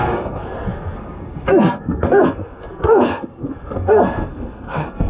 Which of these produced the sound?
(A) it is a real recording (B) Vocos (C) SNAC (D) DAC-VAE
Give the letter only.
C